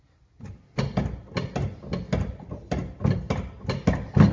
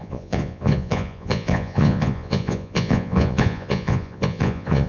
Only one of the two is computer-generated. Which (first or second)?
second